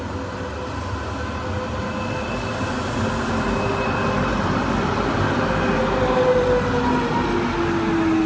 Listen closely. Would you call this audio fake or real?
real